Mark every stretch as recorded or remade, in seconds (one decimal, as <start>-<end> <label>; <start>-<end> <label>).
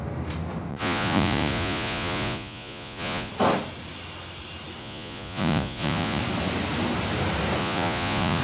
0.0-0.7 recorded; 0.7-3.3 remade; 3.3-4.8 recorded; 4.8-6.2 remade; 6.2-7.6 recorded; 7.6-8.4 remade